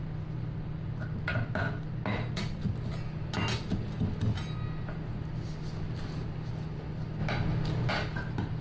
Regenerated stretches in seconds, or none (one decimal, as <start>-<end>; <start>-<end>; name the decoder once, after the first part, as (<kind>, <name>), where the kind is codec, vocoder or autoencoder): none